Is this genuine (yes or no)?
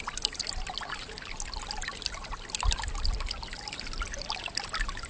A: yes